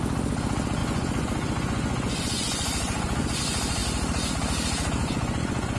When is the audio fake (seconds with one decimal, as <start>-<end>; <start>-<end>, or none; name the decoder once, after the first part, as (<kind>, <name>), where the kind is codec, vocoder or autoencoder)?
0.8-3.4 (vocoder, Vocos); 5.0-5.8